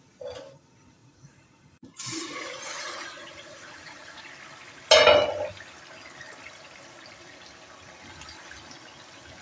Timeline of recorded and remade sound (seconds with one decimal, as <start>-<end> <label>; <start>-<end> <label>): 0.0-1.0 recorded; 1.0-4.3 remade; 4.3-9.4 recorded